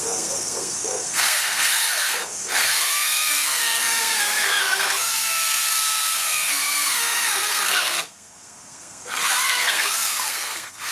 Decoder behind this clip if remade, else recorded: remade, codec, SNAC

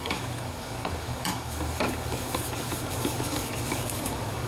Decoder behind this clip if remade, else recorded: remade, codec, DAC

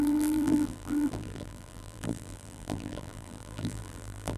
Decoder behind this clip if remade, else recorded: remade, vocoder, BigVGAN v2